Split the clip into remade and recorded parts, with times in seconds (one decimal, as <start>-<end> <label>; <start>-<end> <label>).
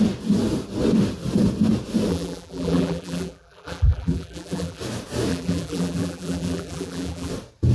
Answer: 0.0-2.1 recorded; 2.1-4.8 remade; 4.8-5.3 recorded; 5.3-7.3 remade; 7.3-7.7 recorded